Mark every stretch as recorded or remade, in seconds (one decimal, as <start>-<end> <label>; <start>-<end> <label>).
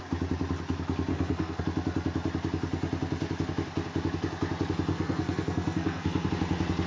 0.0-1.1 recorded; 1.1-1.6 remade; 1.6-4.9 recorded; 4.9-6.3 remade; 6.3-6.9 recorded